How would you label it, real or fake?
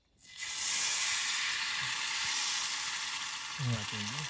real